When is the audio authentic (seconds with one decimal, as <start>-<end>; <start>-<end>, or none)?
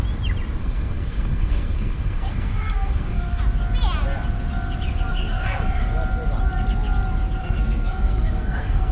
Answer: 0.0-0.6; 3.4-5.1; 5.8-7.4